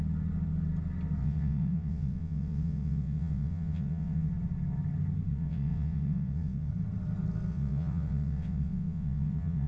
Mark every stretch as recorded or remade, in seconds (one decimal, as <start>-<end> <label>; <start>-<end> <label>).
0.0-1.2 recorded; 1.2-4.3 remade; 4.3-5.3 recorded; 5.3-6.7 remade; 6.7-7.5 recorded; 7.5-9.7 remade